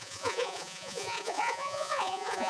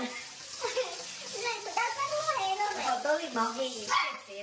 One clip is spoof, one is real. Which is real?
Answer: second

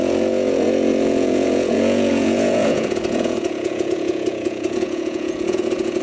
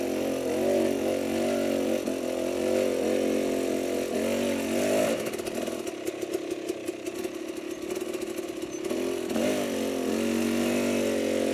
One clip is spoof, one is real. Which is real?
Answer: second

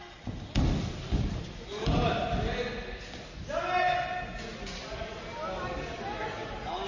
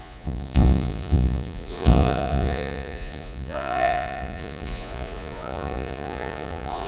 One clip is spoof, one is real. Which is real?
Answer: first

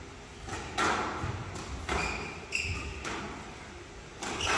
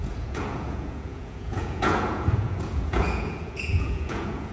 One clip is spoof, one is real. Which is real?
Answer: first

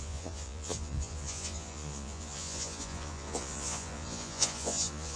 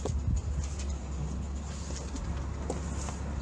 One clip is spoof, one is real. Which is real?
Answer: second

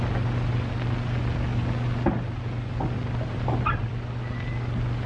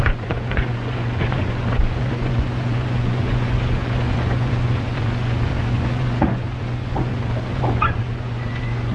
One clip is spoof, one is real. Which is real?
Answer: first